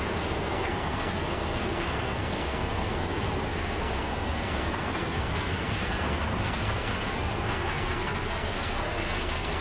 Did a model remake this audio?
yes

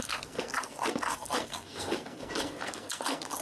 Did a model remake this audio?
yes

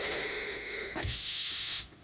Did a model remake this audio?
yes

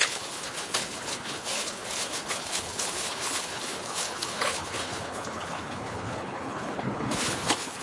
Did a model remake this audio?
yes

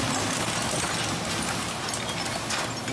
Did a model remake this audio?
no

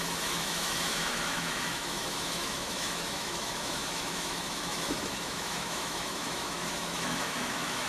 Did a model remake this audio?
yes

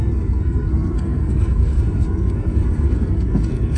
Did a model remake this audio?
yes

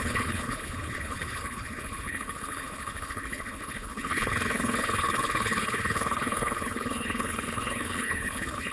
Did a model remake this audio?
yes